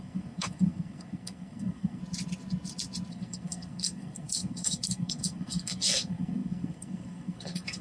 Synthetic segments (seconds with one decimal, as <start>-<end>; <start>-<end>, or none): 0.0-2.0; 3.1-7.8